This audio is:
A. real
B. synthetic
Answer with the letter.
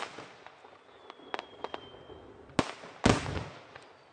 A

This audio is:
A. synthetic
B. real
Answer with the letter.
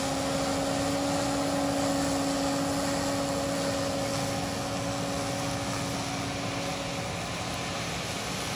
B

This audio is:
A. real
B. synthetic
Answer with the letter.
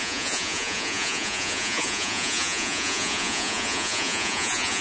B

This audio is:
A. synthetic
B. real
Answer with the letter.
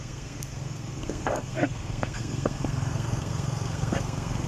A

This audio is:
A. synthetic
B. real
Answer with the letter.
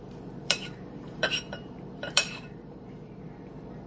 A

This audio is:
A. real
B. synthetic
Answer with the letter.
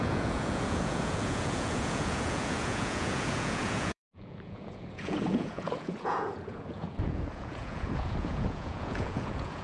B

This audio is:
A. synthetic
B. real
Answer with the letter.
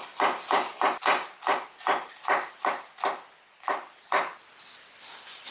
B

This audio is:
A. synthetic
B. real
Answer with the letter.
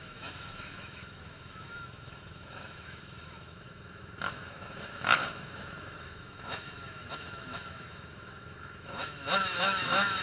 A